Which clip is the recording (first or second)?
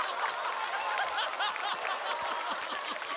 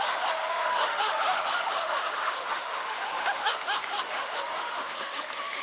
first